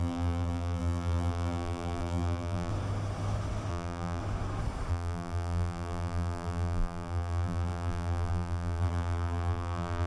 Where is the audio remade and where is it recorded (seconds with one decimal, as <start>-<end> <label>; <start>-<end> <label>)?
0.0-2.7 remade; 2.7-3.7 recorded; 3.7-4.2 remade; 4.2-4.9 recorded; 4.9-10.1 remade